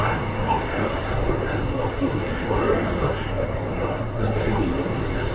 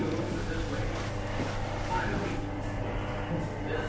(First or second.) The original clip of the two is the second